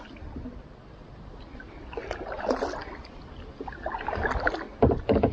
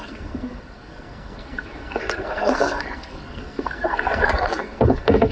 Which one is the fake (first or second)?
second